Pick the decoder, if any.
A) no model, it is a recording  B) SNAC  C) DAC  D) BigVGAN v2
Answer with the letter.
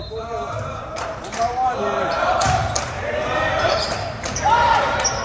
D